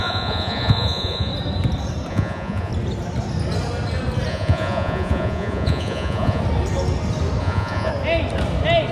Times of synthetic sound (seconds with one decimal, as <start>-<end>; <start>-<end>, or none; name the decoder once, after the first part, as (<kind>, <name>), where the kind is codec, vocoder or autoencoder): 0.0-1.3 (vocoder, Vocos); 2.1-2.7; 4.3-6.4; 7.4-7.9